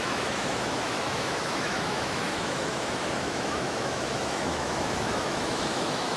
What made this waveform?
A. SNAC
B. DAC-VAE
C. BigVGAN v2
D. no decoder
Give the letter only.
B